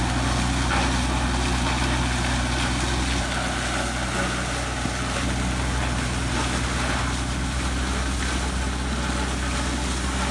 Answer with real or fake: real